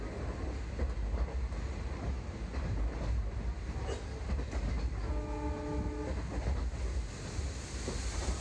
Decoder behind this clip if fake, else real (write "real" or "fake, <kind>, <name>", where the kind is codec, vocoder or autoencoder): real